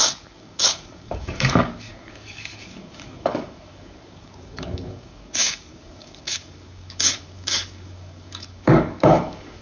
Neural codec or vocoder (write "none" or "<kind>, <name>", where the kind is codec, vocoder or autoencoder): codec, DAC